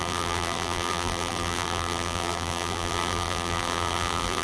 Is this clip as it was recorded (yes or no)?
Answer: no